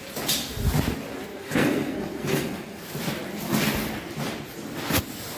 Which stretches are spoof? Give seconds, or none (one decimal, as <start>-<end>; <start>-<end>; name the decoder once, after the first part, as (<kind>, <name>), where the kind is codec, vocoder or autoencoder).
1.3-2.8 (codec, SNAC)